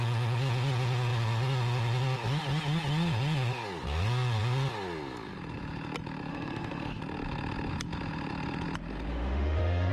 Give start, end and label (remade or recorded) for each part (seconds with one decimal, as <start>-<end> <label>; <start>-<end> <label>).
0.0-6.3 recorded; 6.3-7.0 remade; 7.0-9.1 recorded; 9.1-9.9 remade